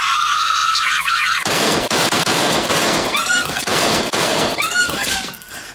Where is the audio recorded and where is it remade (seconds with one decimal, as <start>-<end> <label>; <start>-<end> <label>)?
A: 0.0-5.7 remade